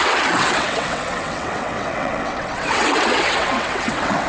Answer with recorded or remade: remade